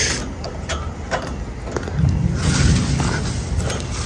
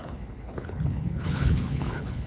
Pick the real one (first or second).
first